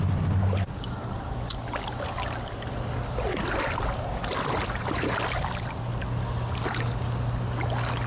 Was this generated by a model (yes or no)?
no